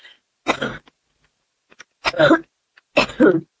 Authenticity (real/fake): real